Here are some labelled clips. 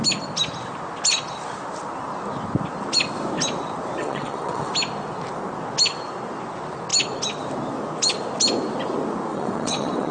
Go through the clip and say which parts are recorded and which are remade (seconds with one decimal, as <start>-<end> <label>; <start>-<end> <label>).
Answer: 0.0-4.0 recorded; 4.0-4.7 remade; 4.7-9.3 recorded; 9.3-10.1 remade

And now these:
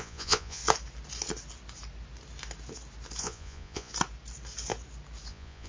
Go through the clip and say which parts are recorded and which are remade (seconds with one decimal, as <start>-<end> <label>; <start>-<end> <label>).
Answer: 0.0-0.6 remade; 0.6-3.2 recorded; 3.2-3.9 remade; 3.9-5.3 recorded; 5.3-5.7 remade

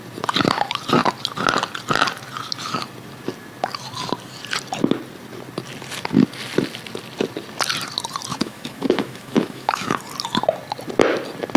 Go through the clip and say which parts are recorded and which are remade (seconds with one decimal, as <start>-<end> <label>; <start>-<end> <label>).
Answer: 0.0-8.3 recorded; 8.3-10.0 remade; 10.0-11.6 recorded

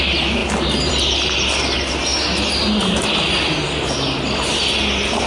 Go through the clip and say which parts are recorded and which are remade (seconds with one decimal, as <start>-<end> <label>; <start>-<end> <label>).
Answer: 0.0-5.3 recorded

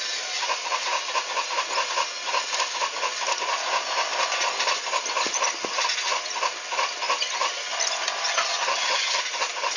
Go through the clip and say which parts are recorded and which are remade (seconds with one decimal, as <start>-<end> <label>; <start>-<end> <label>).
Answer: 0.0-8.2 recorded; 8.2-9.2 remade; 9.2-9.8 recorded

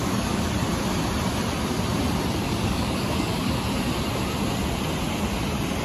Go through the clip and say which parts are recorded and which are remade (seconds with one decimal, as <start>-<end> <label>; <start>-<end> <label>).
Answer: 0.0-0.5 remade; 0.5-2.4 recorded; 2.4-3.5 remade; 3.5-5.8 recorded

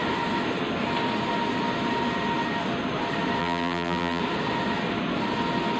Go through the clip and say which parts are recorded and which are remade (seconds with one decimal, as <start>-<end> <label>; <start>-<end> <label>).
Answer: 0.0-3.4 recorded; 3.4-4.2 remade; 4.2-5.8 recorded